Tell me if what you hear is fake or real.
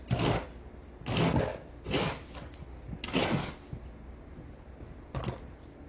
real